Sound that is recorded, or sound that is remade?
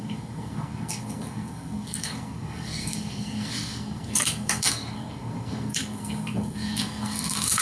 remade